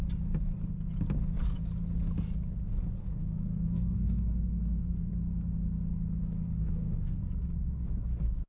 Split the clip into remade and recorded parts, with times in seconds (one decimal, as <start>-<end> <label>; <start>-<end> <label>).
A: 0.0-3.0 recorded; 3.0-5.1 remade; 5.1-6.6 recorded; 6.6-7.2 remade; 7.2-8.5 recorded